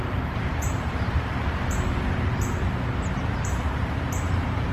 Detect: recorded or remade remade